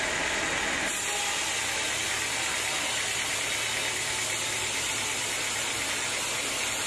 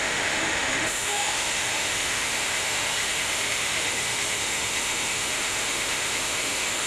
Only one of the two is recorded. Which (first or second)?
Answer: first